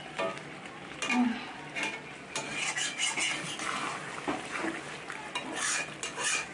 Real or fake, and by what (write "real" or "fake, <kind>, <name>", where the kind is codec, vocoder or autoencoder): real